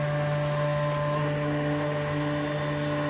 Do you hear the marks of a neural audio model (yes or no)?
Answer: no